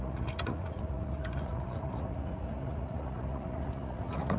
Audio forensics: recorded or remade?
remade